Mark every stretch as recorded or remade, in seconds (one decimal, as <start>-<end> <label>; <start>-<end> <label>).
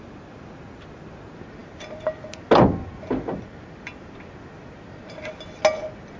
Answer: 0.0-6.2 recorded